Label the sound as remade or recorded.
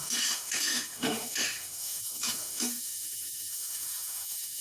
remade